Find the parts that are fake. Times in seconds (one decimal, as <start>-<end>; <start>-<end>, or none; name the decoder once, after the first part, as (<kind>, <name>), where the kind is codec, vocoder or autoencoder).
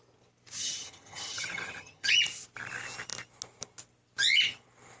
0.6-2.1 (vocoder, HiFi-GAN)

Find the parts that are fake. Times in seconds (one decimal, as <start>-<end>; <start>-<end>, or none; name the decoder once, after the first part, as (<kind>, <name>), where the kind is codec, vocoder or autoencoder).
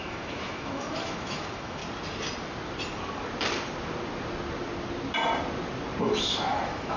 0.0-1.8 (autoencoder, DAC-VAE); 6.0-7.0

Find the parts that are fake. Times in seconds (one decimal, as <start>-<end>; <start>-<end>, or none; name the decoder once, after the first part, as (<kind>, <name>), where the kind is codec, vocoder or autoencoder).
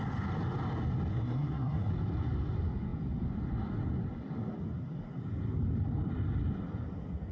1.1-1.9 (codec, SNAC)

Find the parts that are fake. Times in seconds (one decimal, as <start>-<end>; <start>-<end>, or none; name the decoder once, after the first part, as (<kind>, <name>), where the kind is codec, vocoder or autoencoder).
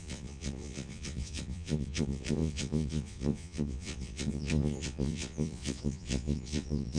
0.0-7.0 (vocoder, Vocos)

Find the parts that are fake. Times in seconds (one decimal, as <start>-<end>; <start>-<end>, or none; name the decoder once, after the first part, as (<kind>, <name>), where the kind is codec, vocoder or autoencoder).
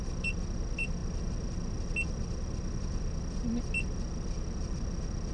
none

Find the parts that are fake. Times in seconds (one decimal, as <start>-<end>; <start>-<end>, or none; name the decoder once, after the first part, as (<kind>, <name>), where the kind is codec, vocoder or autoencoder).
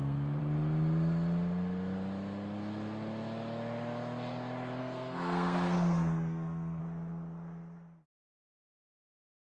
0.0-0.4 (codec, SNAC); 4.8-6.8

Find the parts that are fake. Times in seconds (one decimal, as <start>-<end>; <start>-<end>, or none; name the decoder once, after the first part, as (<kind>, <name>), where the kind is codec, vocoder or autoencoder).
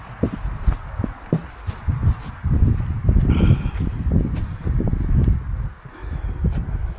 none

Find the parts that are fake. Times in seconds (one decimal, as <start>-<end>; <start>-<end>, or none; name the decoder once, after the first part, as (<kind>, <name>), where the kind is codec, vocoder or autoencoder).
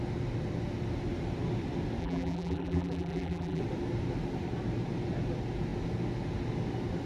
2.0-3.6 (vocoder, BigVGAN v2)